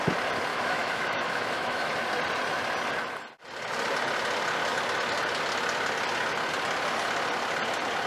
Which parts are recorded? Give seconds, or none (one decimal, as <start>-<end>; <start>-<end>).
0.0-0.5; 1.9-8.1